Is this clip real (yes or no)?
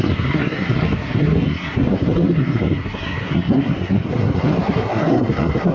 no